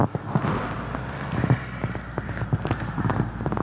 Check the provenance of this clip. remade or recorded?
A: recorded